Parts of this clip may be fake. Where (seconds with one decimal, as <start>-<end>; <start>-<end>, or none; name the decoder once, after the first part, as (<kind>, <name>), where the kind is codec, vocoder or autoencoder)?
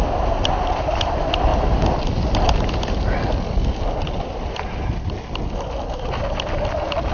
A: none